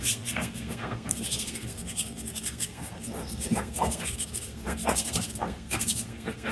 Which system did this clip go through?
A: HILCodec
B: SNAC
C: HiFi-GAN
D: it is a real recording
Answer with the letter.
B